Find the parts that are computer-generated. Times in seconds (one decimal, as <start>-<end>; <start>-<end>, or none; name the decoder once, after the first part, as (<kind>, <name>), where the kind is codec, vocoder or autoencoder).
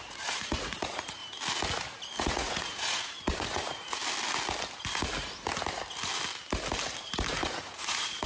0.0-1.2 (vocoder, Vocos); 2.2-4.0; 7.3-8.3